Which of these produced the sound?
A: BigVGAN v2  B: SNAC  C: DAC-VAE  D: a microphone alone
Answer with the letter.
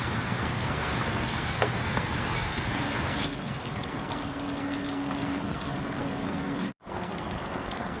B